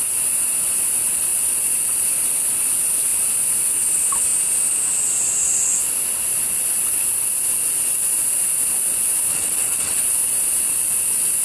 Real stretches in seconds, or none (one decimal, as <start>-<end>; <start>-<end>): 0.0-9.3; 10.0-11.4